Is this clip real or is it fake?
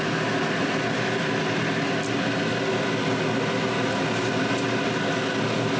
real